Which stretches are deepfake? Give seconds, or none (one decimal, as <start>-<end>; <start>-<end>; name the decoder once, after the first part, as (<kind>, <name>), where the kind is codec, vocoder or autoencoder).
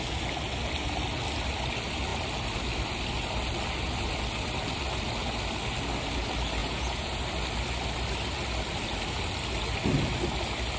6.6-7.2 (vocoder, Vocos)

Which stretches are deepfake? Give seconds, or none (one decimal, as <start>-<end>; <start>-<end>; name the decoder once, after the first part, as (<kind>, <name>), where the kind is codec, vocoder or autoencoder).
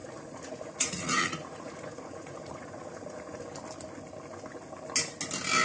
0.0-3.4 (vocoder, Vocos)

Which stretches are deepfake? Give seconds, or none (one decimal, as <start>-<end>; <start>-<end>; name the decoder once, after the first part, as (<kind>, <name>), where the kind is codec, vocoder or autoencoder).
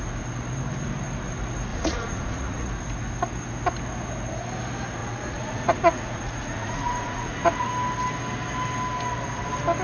1.7-2.7 (vocoder, Vocos); 5.0-7.7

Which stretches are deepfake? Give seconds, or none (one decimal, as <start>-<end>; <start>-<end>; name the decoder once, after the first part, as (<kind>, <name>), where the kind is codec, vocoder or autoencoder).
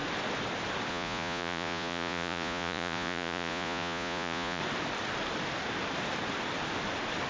0.9-4.6 (vocoder, Vocos)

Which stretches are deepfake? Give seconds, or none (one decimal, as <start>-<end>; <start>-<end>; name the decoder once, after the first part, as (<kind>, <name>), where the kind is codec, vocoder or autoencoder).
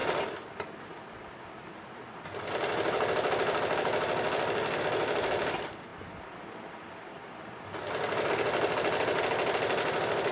none